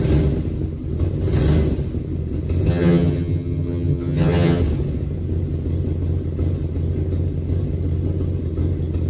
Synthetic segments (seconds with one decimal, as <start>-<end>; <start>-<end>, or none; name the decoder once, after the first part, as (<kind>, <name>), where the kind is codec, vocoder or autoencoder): 2.7-4.6 (vocoder, HiFi-GAN)

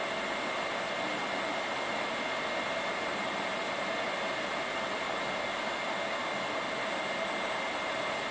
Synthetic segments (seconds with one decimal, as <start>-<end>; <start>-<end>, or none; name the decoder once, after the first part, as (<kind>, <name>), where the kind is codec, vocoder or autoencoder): none

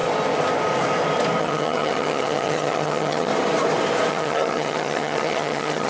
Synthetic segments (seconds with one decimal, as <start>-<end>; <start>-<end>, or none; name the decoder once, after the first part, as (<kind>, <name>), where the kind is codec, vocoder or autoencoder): 1.4-3.3 (vocoder, HiFi-GAN); 4.1-5.9

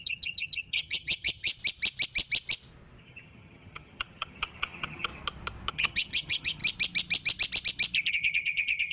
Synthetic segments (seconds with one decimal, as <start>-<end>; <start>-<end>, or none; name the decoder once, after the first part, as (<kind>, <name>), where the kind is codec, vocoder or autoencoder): 0.0-1.5 (vocoder, HiFi-GAN); 3.0-5.1; 5.7-6.6; 8.1-8.9

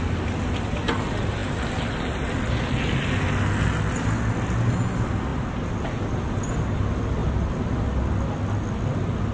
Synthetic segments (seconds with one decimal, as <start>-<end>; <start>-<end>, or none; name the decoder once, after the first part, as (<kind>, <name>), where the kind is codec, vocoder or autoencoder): none

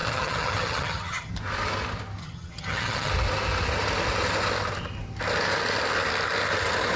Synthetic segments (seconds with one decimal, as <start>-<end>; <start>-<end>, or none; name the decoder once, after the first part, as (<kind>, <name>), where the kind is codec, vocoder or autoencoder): 0.0-1.3 (vocoder, HiFi-GAN); 2.2-3.1